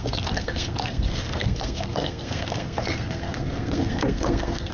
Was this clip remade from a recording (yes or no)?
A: yes